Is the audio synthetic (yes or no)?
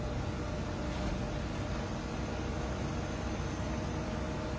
no